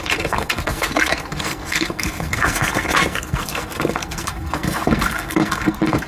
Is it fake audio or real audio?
fake